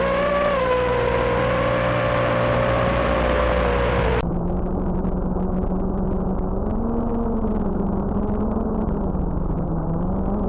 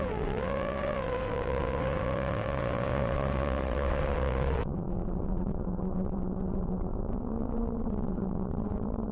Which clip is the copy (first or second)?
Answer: second